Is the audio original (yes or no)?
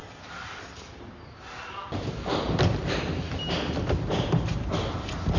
yes